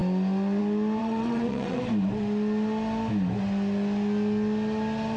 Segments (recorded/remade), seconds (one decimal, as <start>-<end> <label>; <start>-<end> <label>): 0.0-1.0 recorded; 1.0-1.8 remade; 1.8-5.2 recorded